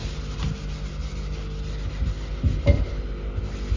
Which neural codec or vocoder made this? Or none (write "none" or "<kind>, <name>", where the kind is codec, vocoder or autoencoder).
none